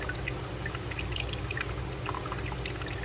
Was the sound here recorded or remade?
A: recorded